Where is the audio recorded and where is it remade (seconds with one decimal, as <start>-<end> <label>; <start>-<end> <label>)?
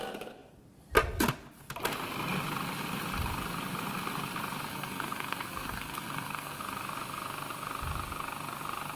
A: 0.0-4.7 recorded; 4.7-6.6 remade; 6.6-9.0 recorded